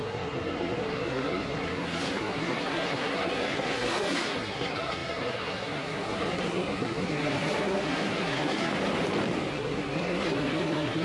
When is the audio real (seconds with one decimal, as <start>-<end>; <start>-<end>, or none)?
8.7-9.5